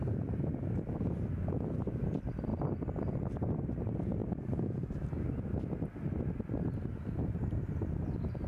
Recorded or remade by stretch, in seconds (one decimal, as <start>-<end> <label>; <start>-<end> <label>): 0.0-2.5 remade; 2.5-3.3 recorded; 3.3-4.2 remade; 4.2-7.5 recorded; 7.5-8.5 remade